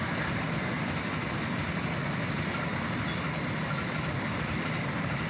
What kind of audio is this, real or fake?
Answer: real